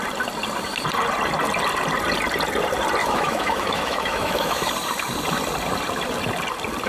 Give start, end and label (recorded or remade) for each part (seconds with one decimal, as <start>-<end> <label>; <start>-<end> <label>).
0.0-3.0 recorded; 3.0-4.7 remade; 4.7-6.9 recorded